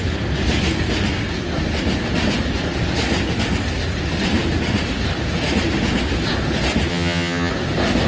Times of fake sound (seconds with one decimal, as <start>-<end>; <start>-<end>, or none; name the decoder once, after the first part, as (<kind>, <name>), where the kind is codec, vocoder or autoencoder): 6.9-7.5 (vocoder, HiFi-GAN)